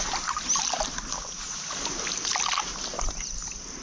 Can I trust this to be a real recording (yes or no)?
yes